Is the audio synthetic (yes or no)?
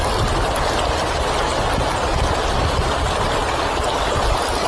no